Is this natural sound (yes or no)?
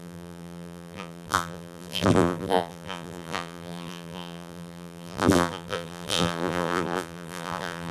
no